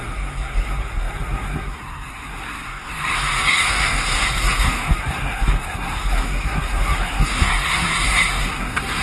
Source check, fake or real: fake